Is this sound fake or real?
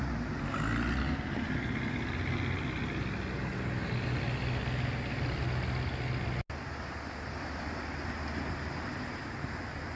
real